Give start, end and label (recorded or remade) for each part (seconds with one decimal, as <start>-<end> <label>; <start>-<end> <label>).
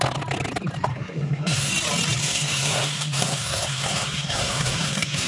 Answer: 0.0-0.9 recorded; 0.9-1.7 remade; 1.7-2.2 recorded; 2.2-5.3 remade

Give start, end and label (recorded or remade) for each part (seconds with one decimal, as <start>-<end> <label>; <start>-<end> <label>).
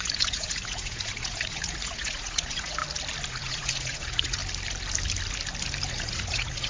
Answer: 0.0-2.8 remade; 2.8-3.3 recorded; 3.3-4.4 remade; 4.4-5.9 recorded; 5.9-6.7 remade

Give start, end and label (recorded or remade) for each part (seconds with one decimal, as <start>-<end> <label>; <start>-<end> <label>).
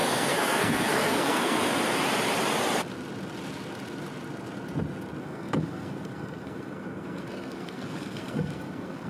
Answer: 0.0-1.7 remade; 1.7-5.2 recorded; 5.2-9.1 remade